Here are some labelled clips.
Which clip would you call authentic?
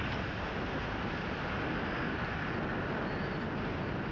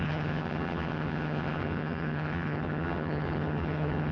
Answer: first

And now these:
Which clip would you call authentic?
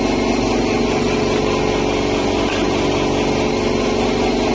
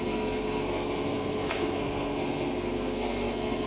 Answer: first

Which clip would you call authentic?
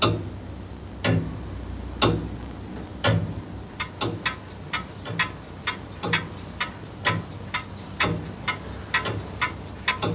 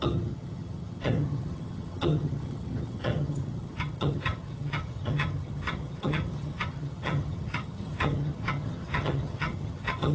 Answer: first